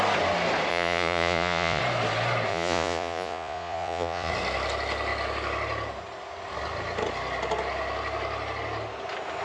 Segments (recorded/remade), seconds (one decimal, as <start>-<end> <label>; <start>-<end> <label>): 0.0-0.7 recorded; 0.7-1.8 remade; 1.8-2.5 recorded; 2.5-4.3 remade; 4.3-9.4 recorded